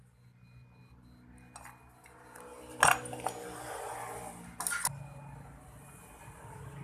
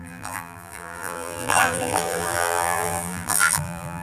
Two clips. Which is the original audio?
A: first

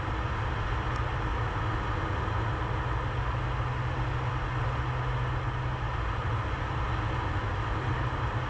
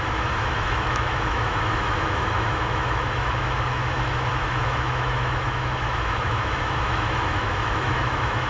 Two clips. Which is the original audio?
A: first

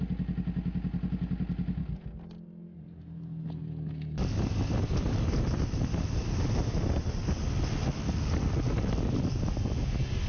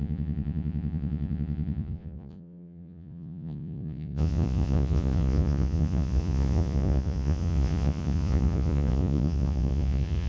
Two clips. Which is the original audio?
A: first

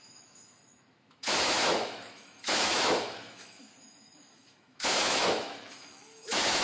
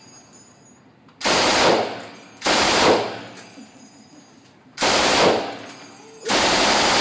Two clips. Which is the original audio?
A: second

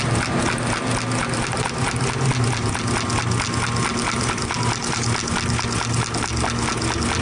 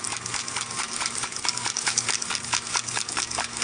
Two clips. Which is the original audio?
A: first